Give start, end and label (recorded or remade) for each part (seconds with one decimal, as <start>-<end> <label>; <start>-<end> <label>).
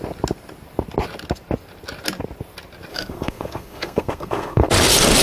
0.0-2.9 recorded; 2.9-4.7 remade; 4.7-5.2 recorded